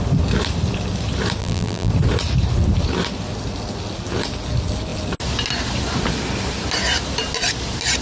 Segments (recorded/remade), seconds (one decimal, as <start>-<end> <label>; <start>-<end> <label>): 0.0-1.4 recorded; 1.4-1.9 remade; 1.9-8.0 recorded